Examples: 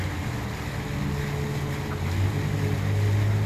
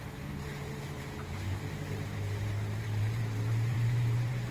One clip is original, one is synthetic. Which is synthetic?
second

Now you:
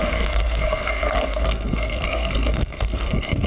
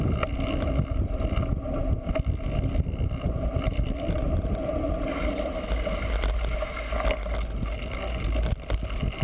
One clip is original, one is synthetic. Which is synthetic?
first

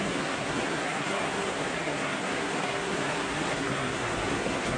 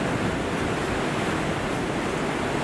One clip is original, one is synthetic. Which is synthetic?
first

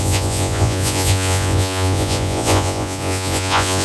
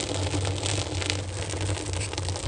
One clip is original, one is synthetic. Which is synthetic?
first